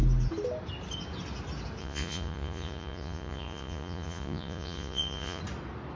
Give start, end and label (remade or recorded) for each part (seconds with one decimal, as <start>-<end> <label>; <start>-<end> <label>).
0.0-1.8 recorded; 1.8-5.4 remade; 5.4-6.0 recorded